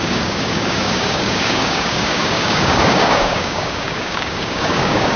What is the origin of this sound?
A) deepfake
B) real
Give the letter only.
A